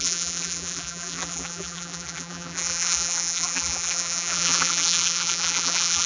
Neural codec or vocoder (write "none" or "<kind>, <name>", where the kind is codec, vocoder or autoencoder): vocoder, BigVGAN v2